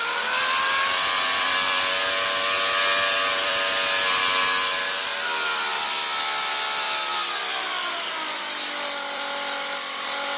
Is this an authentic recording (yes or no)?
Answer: no